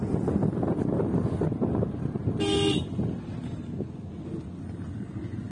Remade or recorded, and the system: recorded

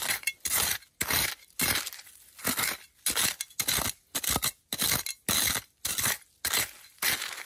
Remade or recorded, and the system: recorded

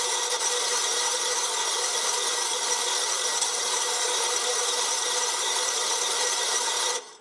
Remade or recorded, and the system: remade, vocoder, BigVGAN v2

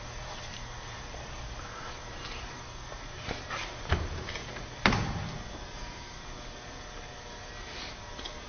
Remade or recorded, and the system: remade, vocoder, BigVGAN v2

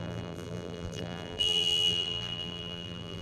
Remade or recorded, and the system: remade, vocoder, BigVGAN v2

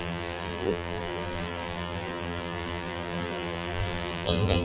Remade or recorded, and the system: remade, vocoder, BigVGAN v2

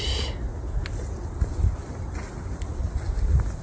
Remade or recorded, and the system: recorded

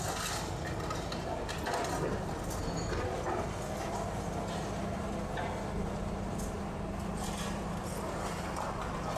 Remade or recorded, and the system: recorded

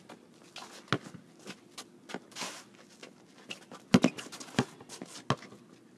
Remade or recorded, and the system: recorded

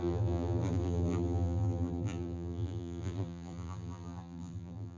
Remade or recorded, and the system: remade, vocoder, BigVGAN v2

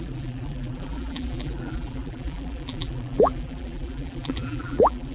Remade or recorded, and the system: remade, vocoder, BigVGAN v2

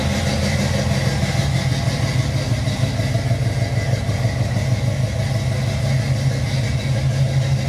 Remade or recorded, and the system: recorded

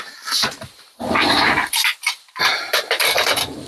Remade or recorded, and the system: remade, vocoder, BigVGAN v2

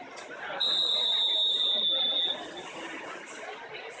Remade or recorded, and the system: recorded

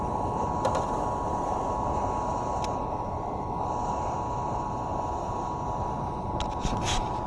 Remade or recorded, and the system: recorded